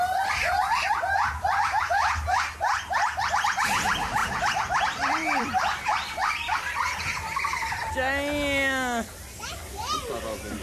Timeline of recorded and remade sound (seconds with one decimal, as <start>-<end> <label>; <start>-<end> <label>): 0.0-4.2 recorded; 4.2-7.9 remade; 7.9-9.5 recorded; 9.5-10.1 remade; 10.1-10.6 recorded